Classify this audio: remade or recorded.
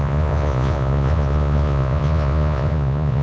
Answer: remade